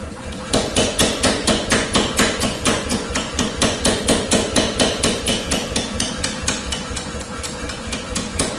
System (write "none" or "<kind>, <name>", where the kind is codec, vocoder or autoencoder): vocoder, Vocos